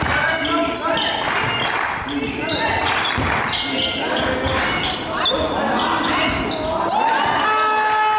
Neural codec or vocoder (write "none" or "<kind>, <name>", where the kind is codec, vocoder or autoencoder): none